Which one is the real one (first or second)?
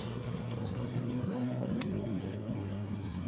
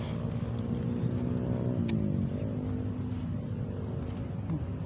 second